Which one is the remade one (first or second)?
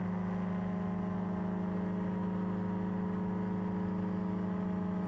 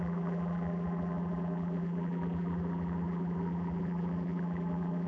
second